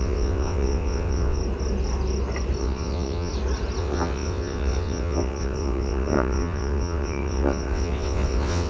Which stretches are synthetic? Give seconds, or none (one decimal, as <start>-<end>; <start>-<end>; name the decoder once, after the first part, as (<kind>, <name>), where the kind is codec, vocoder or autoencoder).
0.0-1.4 (vocoder, WaveNeXt); 2.6-3.3; 3.8-8.7